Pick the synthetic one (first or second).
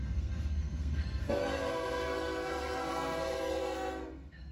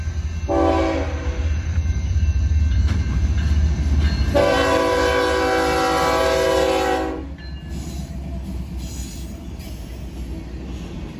first